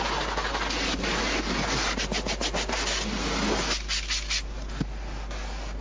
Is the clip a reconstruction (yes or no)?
no